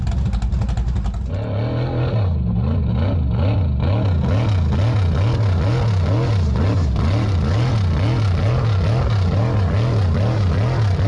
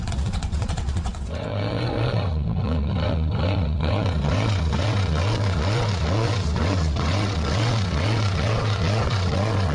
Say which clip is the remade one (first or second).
second